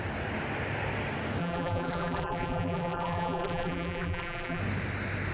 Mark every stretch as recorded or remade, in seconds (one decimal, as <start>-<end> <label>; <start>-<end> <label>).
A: 0.0-1.4 recorded; 1.4-4.6 remade; 4.6-5.3 recorded